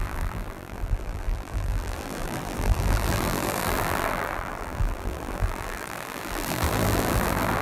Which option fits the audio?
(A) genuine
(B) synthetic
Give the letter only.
B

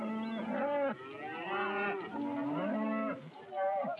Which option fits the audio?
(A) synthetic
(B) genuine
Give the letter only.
B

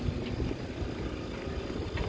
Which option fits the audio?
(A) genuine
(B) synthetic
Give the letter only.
A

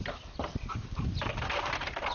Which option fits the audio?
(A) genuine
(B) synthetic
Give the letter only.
A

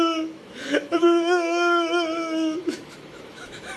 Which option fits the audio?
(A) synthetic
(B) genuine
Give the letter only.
A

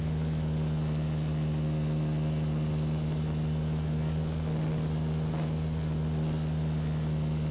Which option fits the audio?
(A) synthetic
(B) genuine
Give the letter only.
B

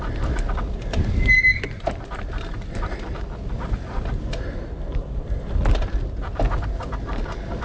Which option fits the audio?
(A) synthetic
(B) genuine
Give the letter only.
B